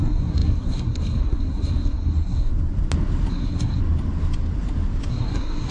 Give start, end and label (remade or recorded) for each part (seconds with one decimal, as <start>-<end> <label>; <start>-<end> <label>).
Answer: 0.0-2.5 remade; 2.5-3.3 recorded; 3.3-3.8 remade; 3.8-5.1 recorded; 5.1-5.7 remade